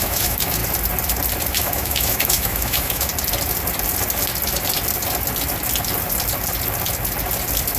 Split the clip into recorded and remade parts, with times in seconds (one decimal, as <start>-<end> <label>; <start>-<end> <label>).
0.0-0.6 remade; 0.6-1.5 recorded; 1.5-3.1 remade; 3.1-7.8 recorded